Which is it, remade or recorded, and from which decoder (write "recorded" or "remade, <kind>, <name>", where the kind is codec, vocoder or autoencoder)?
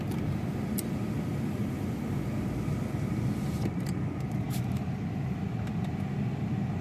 recorded